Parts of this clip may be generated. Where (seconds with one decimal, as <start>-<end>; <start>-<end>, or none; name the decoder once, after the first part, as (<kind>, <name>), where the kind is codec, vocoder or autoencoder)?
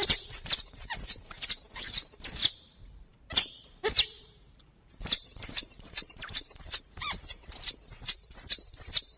0.0-9.2 (vocoder, BigVGAN v2)